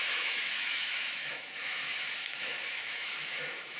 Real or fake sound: fake